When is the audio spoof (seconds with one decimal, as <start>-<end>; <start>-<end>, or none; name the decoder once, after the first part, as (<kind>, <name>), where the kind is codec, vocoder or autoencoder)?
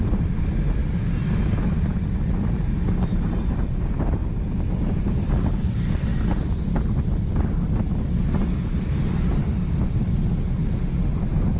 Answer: 0.0-0.8 (vocoder, BigVGAN v2); 2.2-4.2; 4.8-6.1; 10.9-11.6